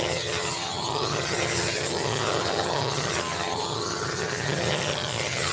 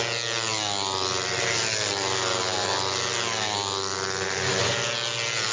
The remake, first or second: first